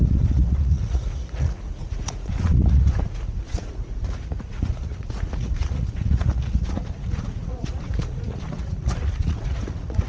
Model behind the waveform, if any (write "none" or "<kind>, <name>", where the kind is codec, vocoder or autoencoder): vocoder, Vocos